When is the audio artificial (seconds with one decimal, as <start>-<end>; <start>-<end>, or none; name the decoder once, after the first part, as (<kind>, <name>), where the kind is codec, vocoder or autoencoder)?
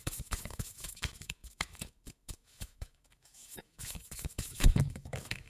0.0-5.5 (autoencoder, DAC-VAE)